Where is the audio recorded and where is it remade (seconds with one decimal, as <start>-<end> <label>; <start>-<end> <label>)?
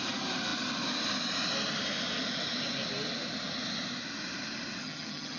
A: 0.0-4.8 recorded; 4.8-5.4 remade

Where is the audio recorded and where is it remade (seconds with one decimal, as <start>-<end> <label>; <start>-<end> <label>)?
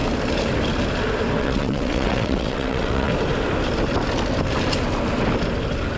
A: 0.0-1.4 recorded; 1.4-3.1 remade; 3.1-6.0 recorded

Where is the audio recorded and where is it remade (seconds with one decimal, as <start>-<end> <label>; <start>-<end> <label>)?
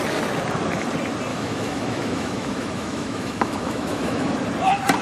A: 0.0-1.3 recorded; 1.3-4.3 remade; 4.3-5.0 recorded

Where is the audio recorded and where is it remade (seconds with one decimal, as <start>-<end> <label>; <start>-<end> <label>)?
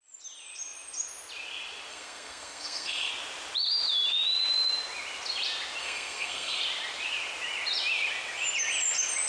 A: 0.0-1.9 recorded; 1.9-3.1 remade; 3.1-5.8 recorded; 5.8-6.6 remade; 6.6-9.3 recorded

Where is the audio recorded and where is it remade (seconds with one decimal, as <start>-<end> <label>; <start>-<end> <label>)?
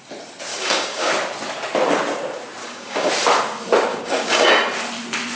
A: 0.0-0.5 recorded; 0.5-1.1 remade; 1.1-2.6 recorded; 2.6-3.1 remade; 3.1-3.9 recorded; 3.9-4.5 remade; 4.5-5.4 recorded